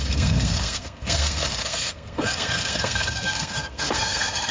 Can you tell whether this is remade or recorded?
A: remade